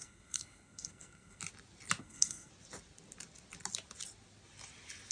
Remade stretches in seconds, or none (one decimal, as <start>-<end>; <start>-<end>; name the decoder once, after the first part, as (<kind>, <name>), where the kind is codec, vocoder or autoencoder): 0.0-1.4 (codec, SNAC); 2.0-2.5